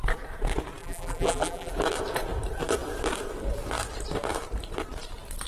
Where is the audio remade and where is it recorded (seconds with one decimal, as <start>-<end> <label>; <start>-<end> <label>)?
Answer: 0.0-0.8 recorded; 0.8-1.7 remade; 1.7-5.5 recorded